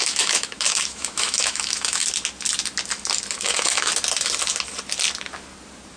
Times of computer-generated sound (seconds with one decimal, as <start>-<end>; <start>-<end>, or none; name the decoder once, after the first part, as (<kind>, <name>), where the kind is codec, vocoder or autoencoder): 0.0-2.0 (autoencoder, DAC-VAE); 3.4-3.9